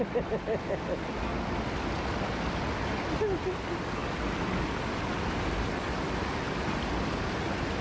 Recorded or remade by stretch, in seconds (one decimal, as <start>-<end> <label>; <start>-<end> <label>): 0.0-7.8 recorded